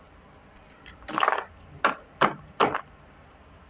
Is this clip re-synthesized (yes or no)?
no